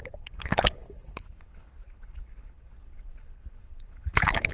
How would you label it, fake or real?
fake